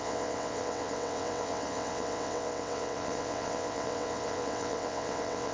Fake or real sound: fake